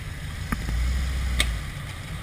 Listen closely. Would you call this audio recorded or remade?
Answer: recorded